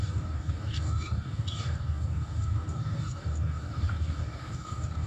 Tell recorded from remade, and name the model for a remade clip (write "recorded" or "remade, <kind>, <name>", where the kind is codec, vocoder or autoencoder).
remade, codec, DAC